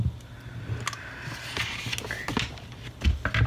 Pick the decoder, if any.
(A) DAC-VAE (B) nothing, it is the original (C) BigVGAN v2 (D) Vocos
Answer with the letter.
B